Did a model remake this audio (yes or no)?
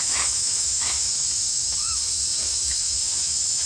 yes